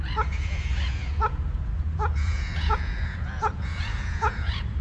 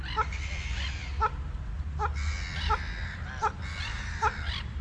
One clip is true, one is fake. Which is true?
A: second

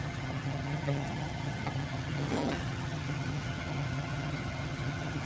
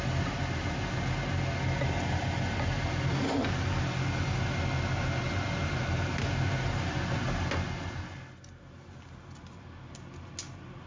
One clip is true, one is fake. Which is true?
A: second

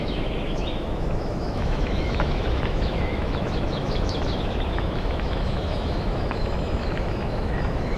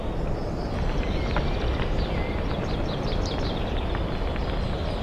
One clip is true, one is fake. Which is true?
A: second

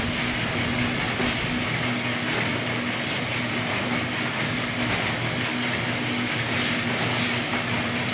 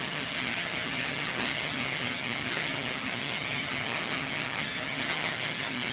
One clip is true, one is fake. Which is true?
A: first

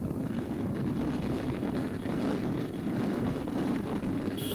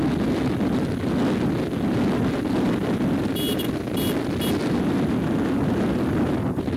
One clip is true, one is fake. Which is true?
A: second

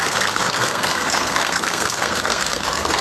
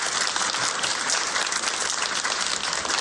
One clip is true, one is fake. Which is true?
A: second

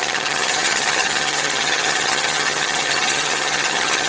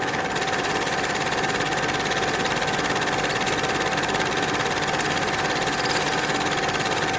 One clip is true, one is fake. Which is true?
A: second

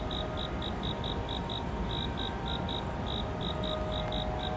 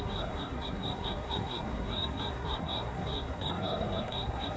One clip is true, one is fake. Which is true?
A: first